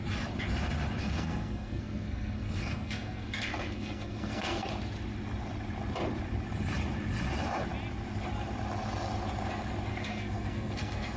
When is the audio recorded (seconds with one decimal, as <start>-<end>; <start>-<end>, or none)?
0.0-1.0; 4.7-9.9